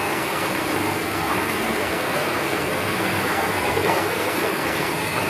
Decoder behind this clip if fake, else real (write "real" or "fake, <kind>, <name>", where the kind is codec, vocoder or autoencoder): fake, codec, SNAC